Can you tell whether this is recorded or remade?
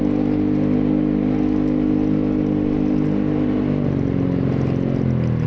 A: recorded